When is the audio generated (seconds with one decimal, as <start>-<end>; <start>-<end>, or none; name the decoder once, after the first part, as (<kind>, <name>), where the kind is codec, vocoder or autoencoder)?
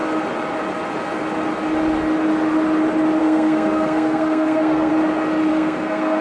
3.2-4.9 (codec, SNAC); 5.5-6.2